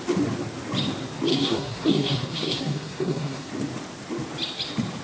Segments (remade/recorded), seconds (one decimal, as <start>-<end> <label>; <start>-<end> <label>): 0.0-1.3 recorded; 1.3-3.5 remade; 3.5-5.0 recorded